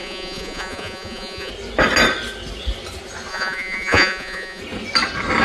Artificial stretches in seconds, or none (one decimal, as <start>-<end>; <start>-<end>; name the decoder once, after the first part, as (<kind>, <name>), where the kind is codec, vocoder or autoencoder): 0.0-1.5 (vocoder, Vocos); 3.3-4.6